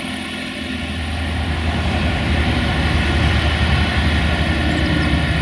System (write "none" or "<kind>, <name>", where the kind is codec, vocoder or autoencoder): none